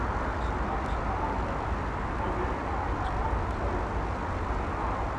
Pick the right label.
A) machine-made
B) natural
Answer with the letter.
B